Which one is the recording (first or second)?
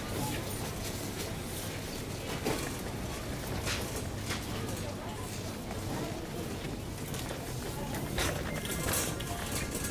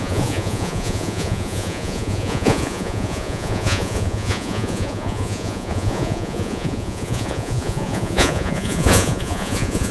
first